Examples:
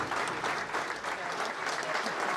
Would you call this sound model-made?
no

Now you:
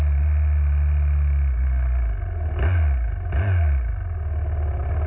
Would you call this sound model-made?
no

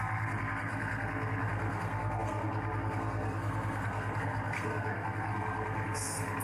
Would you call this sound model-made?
yes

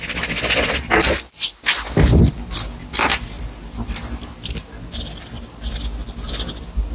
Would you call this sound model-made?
no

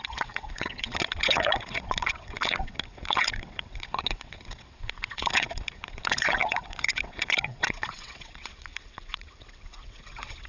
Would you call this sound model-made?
yes